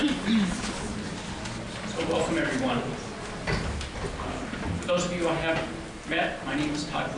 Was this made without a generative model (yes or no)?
yes